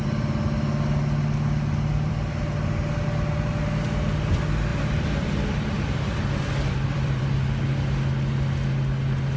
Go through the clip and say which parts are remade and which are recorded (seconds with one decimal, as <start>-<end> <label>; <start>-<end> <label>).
0.0-1.9 recorded; 1.9-2.4 remade; 2.4-4.7 recorded; 4.7-7.3 remade; 7.3-9.4 recorded